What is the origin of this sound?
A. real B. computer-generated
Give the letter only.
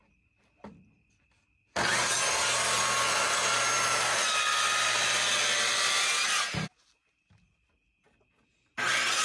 A